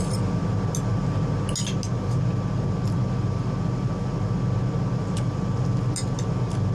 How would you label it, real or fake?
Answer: real